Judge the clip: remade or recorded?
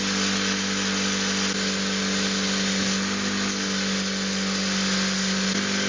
recorded